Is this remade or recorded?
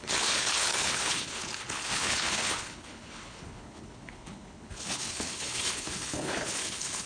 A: remade